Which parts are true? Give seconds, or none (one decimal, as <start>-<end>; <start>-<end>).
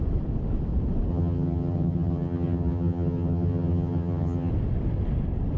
0.0-1.1; 4.5-5.6